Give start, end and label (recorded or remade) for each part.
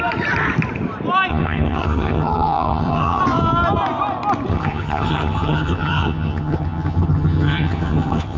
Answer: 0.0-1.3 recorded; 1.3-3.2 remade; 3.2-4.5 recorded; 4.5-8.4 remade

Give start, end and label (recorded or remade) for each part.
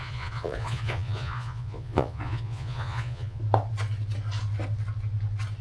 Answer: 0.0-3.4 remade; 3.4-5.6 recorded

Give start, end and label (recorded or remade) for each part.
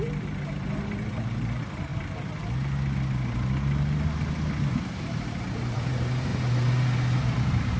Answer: 0.0-1.9 remade; 1.9-5.4 recorded; 5.4-6.3 remade; 6.3-7.2 recorded; 7.2-7.8 remade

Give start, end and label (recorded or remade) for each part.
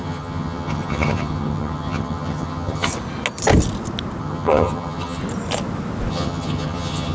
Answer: 0.0-2.9 remade; 2.9-4.2 recorded; 4.2-5.2 remade; 5.2-6.1 recorded; 6.1-7.1 remade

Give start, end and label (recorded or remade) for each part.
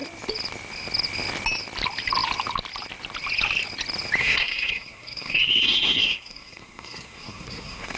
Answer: 0.0-4.2 recorded; 4.2-8.0 remade